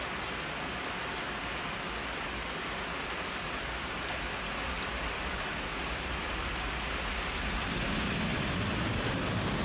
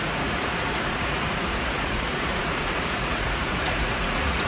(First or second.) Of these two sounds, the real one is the first